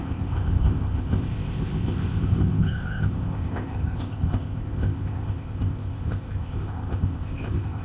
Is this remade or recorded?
remade